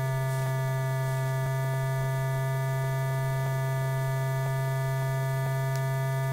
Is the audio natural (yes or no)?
yes